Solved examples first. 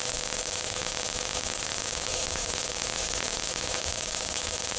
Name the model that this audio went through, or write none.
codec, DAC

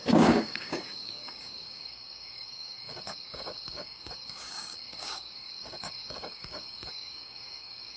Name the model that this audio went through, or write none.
codec, DAC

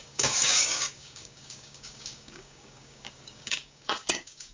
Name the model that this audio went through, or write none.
codec, DAC